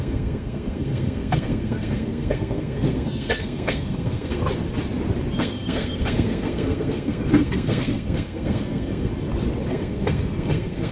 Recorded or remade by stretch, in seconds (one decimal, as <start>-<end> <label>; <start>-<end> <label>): 0.0-4.4 remade; 4.4-5.4 recorded; 5.4-9.1 remade; 9.1-9.7 recorded; 9.7-10.9 remade